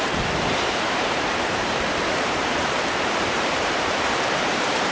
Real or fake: fake